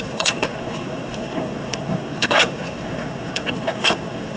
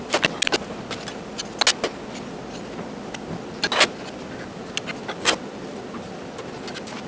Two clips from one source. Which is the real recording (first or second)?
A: second